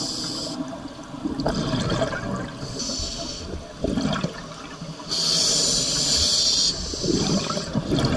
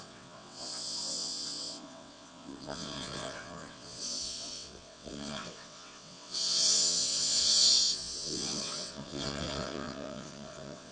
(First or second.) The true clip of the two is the first